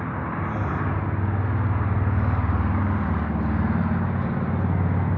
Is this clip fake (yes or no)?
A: yes